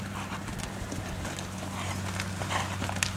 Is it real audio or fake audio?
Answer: real